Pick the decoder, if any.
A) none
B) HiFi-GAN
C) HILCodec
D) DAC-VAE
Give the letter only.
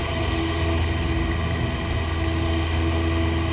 A